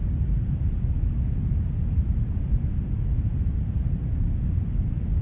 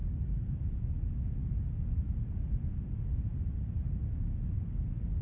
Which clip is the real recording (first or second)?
second